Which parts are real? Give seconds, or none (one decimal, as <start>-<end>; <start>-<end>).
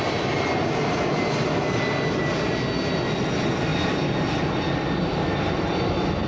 0.0-5.3; 5.8-6.3